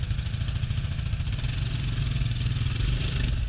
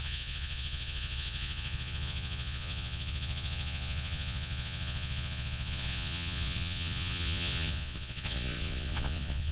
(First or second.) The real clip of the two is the first